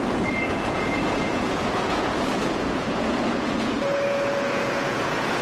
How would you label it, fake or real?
fake